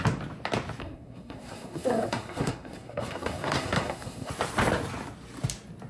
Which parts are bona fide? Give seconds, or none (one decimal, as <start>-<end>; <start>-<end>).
0.0-0.8; 4.3-5.9